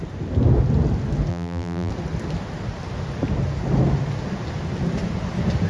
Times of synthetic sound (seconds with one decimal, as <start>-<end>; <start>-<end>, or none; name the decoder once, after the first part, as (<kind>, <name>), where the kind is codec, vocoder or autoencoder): 1.3-1.9 (vocoder, BigVGAN v2)